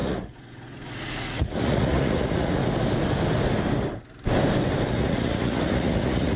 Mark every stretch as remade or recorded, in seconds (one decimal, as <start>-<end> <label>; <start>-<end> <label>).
0.0-2.6 remade; 2.6-4.9 recorded; 4.9-6.4 remade